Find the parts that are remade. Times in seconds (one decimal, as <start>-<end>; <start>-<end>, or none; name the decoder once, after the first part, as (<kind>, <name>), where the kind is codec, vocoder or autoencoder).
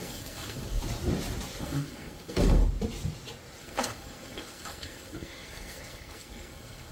0.0-0.8 (codec, SNAC); 1.6-2.6; 3.6-6.9